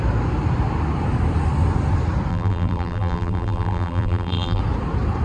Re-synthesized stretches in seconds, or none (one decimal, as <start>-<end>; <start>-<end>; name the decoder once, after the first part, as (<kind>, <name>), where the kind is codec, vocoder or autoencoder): 2.3-4.6 (vocoder, BigVGAN v2)